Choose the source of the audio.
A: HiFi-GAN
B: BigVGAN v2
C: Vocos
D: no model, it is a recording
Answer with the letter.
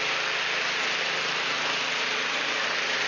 D